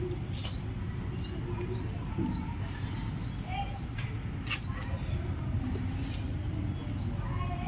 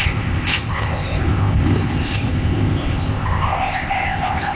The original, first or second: first